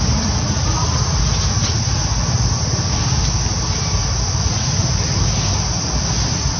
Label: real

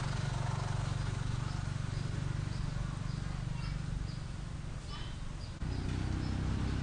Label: real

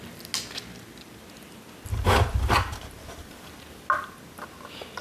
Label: real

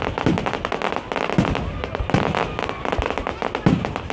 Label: real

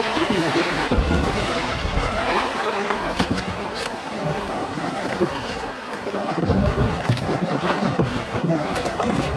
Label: fake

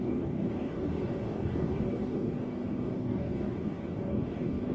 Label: fake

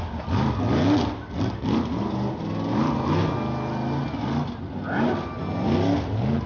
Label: real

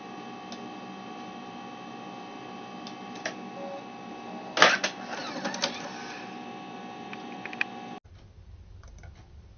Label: real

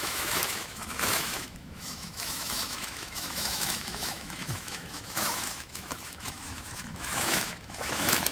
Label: fake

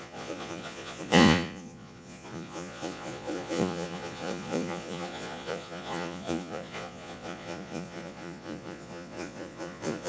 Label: fake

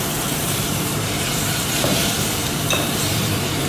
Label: fake